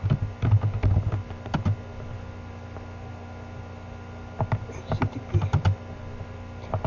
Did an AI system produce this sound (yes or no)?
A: no